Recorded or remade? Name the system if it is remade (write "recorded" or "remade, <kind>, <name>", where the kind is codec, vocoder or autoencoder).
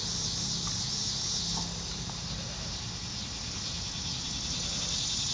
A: recorded